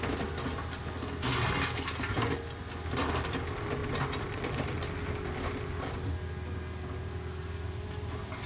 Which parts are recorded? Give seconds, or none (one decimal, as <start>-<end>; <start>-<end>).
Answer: 0.0-8.5

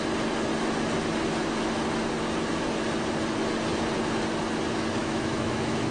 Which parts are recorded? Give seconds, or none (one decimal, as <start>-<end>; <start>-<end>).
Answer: 0.0-5.0

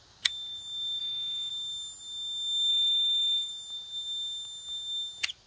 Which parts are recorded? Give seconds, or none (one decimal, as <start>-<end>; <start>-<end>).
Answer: 0.0-1.0; 1.5-2.7; 3.5-5.5

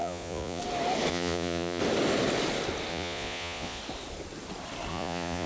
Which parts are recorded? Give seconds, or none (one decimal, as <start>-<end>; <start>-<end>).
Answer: 0.6-1.1; 1.8-2.9; 3.8-4.9

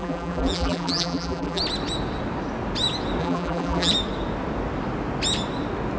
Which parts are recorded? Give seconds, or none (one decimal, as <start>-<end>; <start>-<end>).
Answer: 1.6-3.2; 3.9-6.0